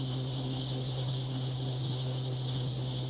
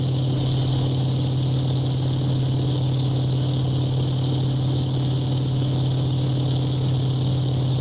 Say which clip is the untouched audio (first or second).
second